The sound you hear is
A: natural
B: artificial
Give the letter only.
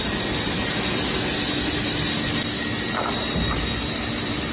A